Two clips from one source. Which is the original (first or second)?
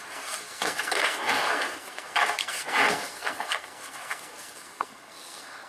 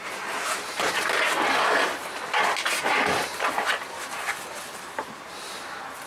second